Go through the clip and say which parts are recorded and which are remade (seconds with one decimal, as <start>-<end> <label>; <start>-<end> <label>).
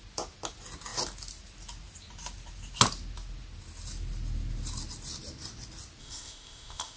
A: 0.0-6.0 recorded; 6.0-7.0 remade